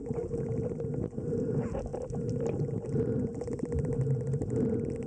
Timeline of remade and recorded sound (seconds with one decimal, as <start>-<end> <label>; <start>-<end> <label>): 0.0-5.1 recorded